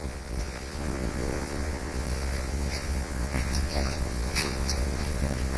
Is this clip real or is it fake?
fake